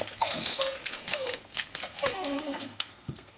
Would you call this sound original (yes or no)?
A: no